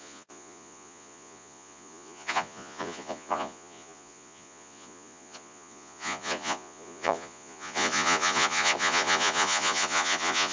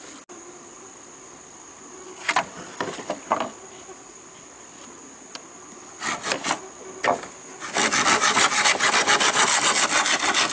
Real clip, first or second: second